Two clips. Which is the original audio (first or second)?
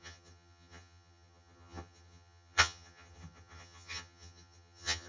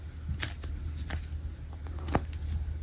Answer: second